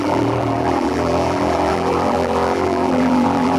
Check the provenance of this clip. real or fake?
fake